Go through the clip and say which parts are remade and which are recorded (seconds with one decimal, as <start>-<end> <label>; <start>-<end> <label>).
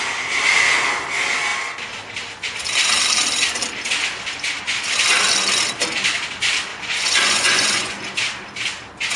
0.0-6.7 recorded; 6.7-8.0 remade; 8.0-9.2 recorded